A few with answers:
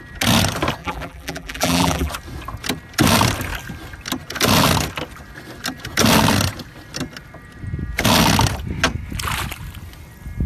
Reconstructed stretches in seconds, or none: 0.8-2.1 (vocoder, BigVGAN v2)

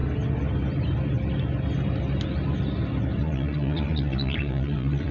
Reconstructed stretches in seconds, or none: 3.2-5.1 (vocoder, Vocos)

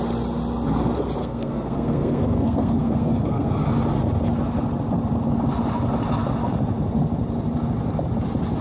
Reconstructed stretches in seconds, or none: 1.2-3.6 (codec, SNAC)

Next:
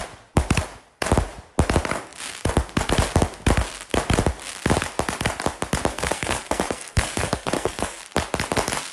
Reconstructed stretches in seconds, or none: 5.9-8.0 (codec, SNAC)

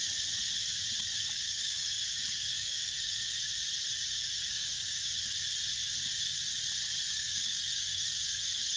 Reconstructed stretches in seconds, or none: 1.2-3.3 (codec, DAC); 4.1-5.0; 7.1-8.8

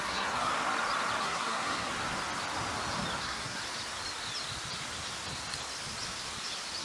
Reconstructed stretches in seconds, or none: 0.0-0.5 (codec, SNAC); 1.2-1.9; 3.2-3.6